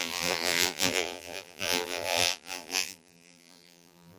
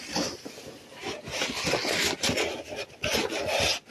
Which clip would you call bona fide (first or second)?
second